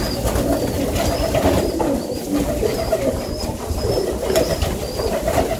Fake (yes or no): no